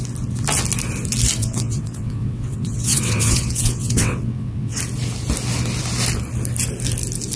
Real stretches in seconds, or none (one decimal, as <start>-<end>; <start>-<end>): 0.0-1.4; 4.8-7.4